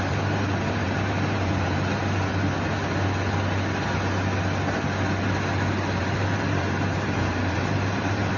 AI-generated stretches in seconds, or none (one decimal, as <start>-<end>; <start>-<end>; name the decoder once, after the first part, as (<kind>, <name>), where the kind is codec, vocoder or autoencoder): 0.0-2.0 (vocoder, BigVGAN v2); 6.0-8.4

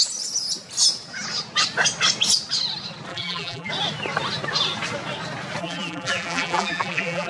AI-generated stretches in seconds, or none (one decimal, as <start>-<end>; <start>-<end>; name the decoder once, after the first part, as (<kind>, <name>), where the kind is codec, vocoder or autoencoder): 3.1-3.7 (vocoder, BigVGAN v2); 5.6-7.3

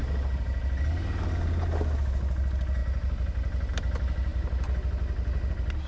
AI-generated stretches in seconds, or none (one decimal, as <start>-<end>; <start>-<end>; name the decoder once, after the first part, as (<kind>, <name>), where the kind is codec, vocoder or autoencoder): none

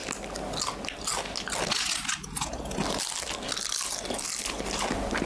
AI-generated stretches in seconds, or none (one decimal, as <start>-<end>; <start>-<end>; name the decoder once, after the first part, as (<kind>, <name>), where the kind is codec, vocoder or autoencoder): 3.9-4.6 (vocoder, BigVGAN v2)

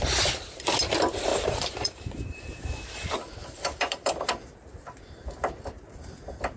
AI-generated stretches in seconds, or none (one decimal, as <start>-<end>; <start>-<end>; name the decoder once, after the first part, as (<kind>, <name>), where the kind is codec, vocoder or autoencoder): 1.3-2.4 (vocoder, BigVGAN v2); 3.4-4.3

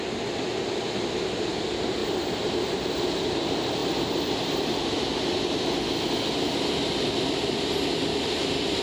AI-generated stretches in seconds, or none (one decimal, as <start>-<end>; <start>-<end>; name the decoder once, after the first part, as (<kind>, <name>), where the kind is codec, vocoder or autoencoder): 2.0-2.7 (vocoder, BigVGAN v2)